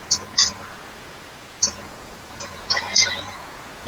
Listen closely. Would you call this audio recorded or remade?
remade